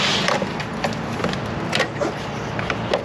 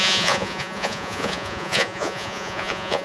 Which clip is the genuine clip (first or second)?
first